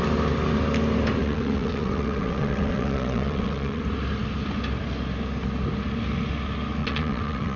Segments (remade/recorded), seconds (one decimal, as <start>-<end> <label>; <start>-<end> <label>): 0.0-1.2 recorded; 1.2-3.8 remade; 3.8-6.8 recorded; 6.8-7.6 remade